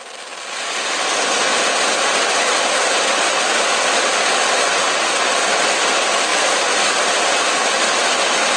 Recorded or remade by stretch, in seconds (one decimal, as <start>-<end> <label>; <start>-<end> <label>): 0.0-8.6 recorded